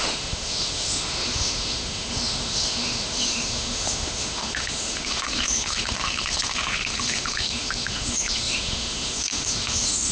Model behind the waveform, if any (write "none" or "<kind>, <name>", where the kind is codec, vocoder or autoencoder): autoencoder, DAC-VAE